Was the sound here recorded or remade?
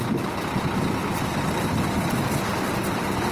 recorded